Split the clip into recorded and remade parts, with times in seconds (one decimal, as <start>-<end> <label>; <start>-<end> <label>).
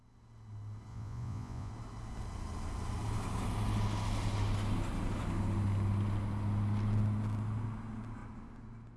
0.0-0.9 recorded; 0.9-1.7 remade; 1.7-9.0 recorded